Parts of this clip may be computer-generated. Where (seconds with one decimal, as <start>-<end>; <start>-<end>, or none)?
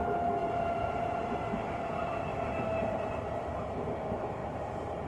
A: 0.4-1.0; 2.3-3.1; 4.4-5.1